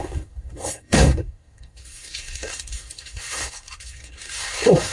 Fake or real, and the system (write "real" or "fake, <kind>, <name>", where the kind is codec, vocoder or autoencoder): fake, codec, SNAC